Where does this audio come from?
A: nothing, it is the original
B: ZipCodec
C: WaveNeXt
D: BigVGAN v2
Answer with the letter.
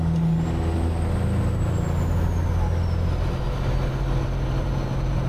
A